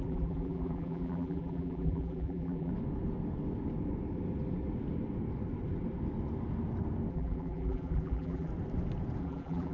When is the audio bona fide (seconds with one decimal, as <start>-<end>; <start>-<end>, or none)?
2.7-7.1; 8.5-9.2